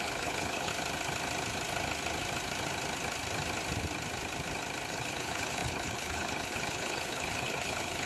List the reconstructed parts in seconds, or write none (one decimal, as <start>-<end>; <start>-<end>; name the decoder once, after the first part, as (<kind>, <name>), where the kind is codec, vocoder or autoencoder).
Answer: 0.0-0.7 (codec, HILCodec); 4.9-8.1